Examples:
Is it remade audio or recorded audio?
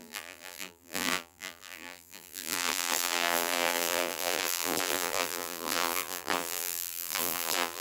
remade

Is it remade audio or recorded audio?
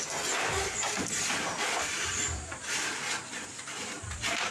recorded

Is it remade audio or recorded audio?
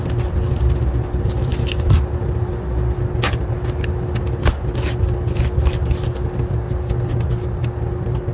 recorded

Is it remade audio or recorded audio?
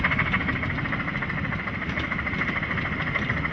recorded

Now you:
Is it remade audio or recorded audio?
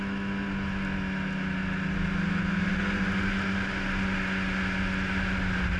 recorded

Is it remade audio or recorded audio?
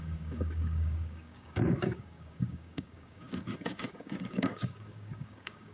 remade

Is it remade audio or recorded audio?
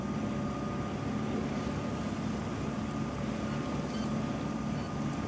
recorded